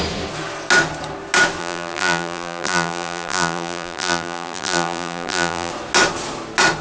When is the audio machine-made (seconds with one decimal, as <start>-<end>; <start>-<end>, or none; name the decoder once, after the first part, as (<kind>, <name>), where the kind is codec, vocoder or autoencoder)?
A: 1.6-5.7 (vocoder, BigVGAN v2)